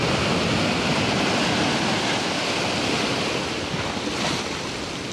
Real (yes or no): yes